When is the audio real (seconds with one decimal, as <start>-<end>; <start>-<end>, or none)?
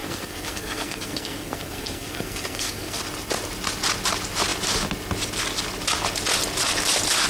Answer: 3.0-7.3